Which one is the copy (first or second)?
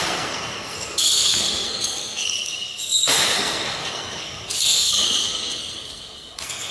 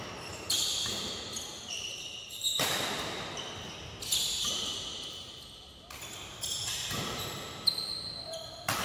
first